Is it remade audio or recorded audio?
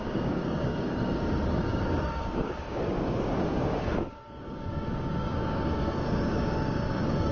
remade